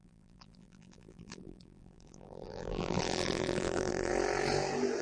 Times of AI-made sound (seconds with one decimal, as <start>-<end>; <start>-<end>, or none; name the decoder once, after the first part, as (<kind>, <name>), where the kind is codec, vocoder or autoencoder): 0.0-4.1 (vocoder, BigVGAN v2)